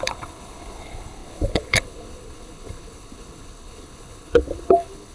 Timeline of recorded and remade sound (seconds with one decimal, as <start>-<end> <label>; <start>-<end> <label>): 0.0-5.1 remade